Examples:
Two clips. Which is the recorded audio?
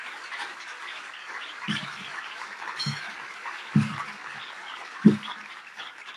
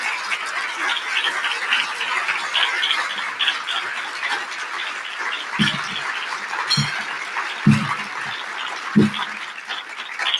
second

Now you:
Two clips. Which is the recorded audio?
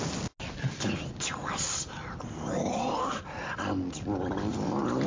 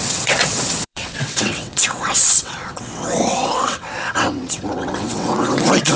first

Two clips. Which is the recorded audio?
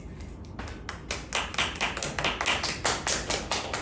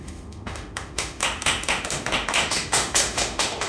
first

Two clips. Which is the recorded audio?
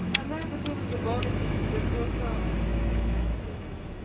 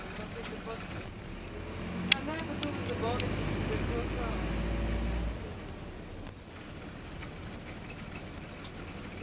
second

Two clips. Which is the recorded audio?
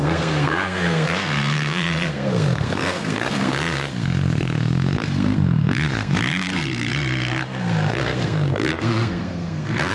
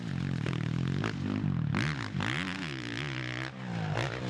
second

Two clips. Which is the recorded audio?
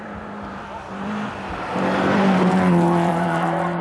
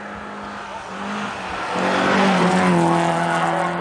second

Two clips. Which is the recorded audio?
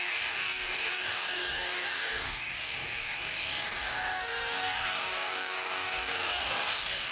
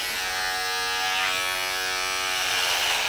second